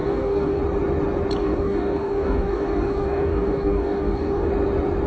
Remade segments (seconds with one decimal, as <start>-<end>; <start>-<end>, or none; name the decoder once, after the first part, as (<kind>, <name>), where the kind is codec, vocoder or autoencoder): 0.0-0.6 (codec, DAC); 1.4-4.5